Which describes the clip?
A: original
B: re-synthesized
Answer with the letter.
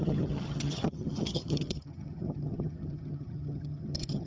B